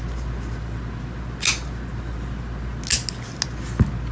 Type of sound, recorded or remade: recorded